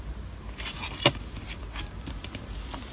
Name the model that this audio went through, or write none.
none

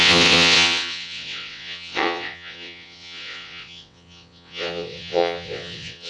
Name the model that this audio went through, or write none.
vocoder, WaveNeXt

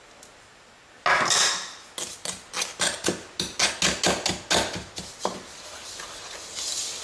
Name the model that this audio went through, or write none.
none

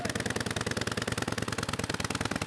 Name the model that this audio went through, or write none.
none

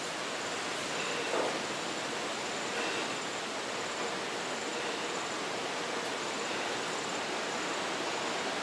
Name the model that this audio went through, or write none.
none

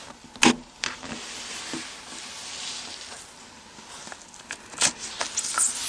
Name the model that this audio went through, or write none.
none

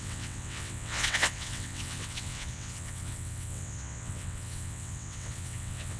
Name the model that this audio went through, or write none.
vocoder, WaveNeXt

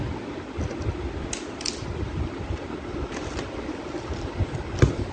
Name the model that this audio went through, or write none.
none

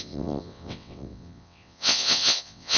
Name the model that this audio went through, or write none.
vocoder, WaveNeXt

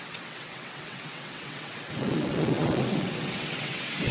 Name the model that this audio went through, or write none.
vocoder, WaveNeXt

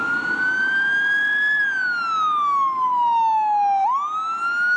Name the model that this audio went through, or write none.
none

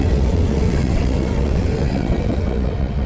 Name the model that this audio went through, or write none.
vocoder, WaveNeXt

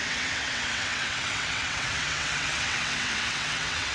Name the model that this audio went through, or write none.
vocoder, WaveNeXt